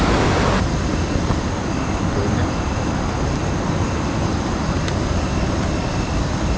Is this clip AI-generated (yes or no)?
no